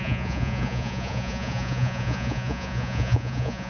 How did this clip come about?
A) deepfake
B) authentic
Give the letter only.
A